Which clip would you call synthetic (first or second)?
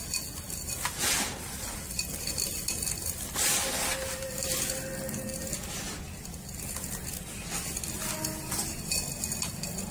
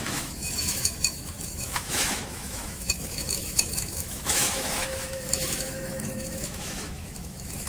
second